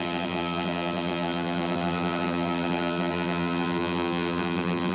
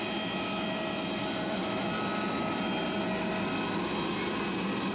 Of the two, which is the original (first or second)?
second